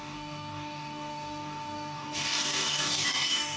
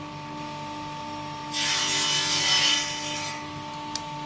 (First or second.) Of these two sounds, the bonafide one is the second